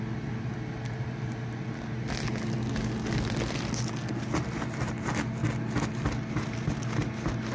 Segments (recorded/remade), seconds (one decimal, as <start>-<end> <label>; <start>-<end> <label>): 0.0-7.5 recorded